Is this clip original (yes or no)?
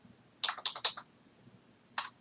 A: yes